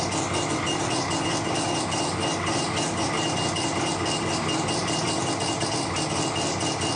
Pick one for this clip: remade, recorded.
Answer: recorded